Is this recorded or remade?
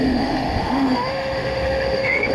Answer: remade